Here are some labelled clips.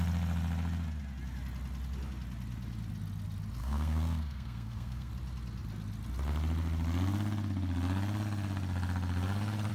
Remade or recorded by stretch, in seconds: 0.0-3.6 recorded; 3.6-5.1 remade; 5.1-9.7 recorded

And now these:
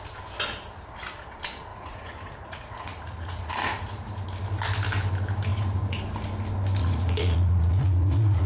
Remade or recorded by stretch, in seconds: 0.0-1.7 recorded; 1.7-4.1 remade; 4.1-5.5 recorded; 5.5-6.0 remade; 6.0-6.8 recorded; 6.8-8.5 remade

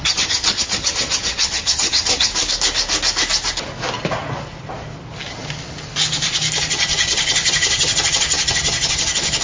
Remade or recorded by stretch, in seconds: 0.0-2.3 remade; 2.3-6.6 recorded; 6.6-9.4 remade

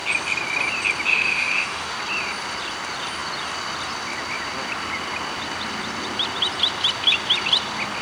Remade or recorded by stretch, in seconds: 0.0-1.1 recorded; 1.1-2.0 remade; 2.0-8.0 recorded

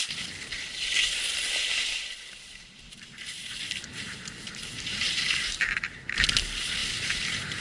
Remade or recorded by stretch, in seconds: 0.0-7.6 recorded

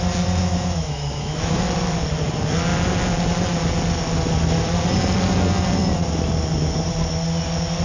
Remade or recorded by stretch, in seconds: 0.0-0.4 recorded; 0.4-1.6 remade; 1.6-7.8 recorded

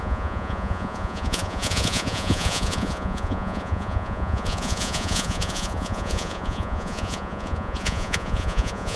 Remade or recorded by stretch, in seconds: 0.0-9.0 remade

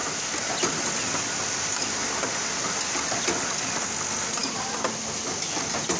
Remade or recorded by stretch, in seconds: 0.0-6.0 recorded